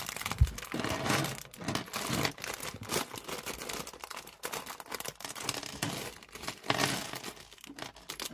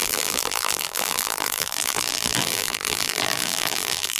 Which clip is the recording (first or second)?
first